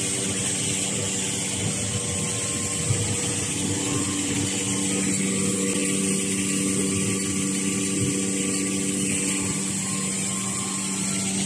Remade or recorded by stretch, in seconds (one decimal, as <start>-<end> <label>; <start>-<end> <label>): 0.0-11.5 recorded